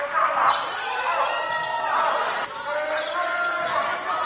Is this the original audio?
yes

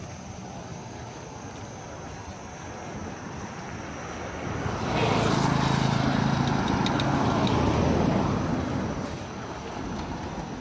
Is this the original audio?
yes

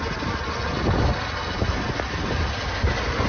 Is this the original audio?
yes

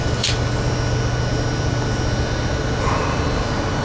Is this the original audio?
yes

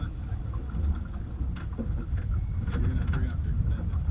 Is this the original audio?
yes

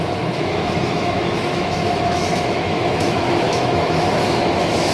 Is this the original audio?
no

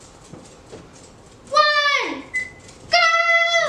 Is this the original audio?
yes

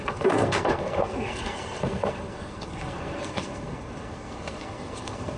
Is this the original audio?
no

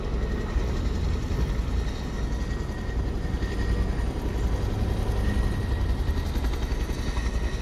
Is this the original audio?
yes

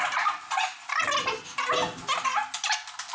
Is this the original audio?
yes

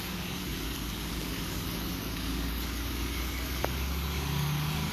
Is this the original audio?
no